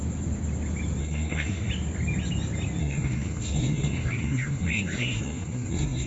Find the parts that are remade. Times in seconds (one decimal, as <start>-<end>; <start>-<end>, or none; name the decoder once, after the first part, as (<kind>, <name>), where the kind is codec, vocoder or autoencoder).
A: 1.0-1.7 (codec, SNAC); 2.8-6.1